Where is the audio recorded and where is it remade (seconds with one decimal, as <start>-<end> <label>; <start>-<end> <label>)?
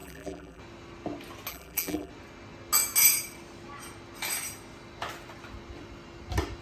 0.0-0.6 remade; 0.6-1.5 recorded; 1.5-2.1 remade; 2.1-6.6 recorded